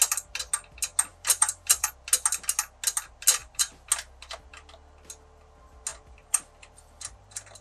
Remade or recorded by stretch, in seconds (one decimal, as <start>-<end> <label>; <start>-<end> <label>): 0.0-1.1 recorded; 1.1-1.9 remade; 1.9-3.4 recorded; 3.4-3.9 remade; 3.9-5.9 recorded; 5.9-7.6 remade